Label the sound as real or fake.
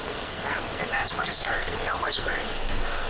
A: fake